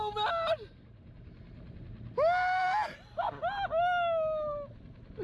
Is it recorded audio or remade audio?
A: recorded